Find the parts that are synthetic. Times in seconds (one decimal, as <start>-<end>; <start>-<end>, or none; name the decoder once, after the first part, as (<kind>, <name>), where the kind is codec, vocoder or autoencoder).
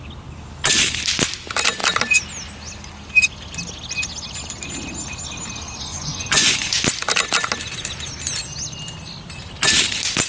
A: 5.9-6.8 (vocoder, Vocos)